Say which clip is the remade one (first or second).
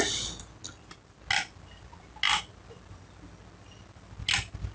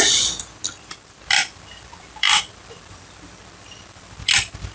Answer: second